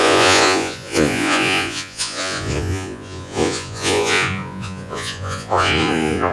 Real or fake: fake